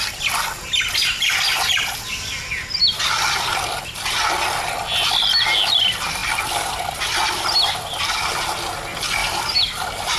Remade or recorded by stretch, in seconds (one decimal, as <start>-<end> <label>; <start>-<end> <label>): 0.0-9.2 recorded; 9.2-10.2 remade